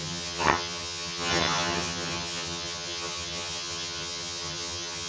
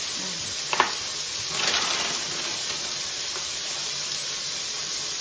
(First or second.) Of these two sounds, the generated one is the first